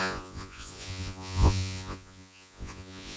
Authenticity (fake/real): fake